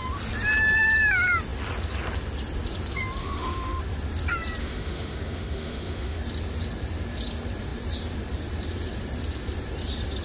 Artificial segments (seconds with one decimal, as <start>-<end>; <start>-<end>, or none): 3.2-3.8; 4.6-6.2